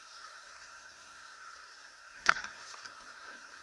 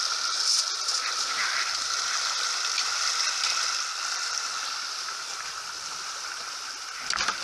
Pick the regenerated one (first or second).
first